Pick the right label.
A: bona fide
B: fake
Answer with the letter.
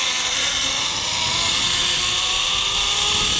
A